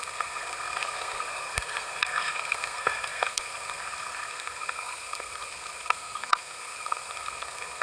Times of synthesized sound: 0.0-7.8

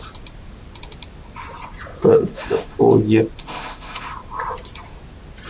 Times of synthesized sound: 2.1-2.8; 3.4-4.1

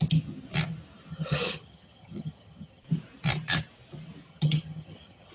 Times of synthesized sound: 1.1-2.8; 4.3-5.3